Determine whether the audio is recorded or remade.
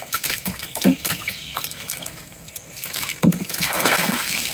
remade